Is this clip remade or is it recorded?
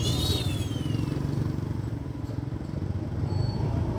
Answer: recorded